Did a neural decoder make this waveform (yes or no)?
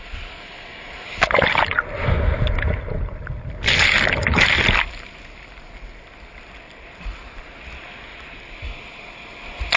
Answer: no